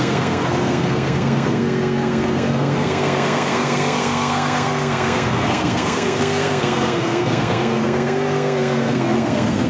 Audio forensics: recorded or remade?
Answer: remade